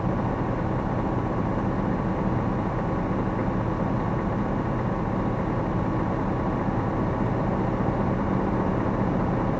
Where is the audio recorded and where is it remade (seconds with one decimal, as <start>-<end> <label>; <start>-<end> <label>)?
0.0-9.6 recorded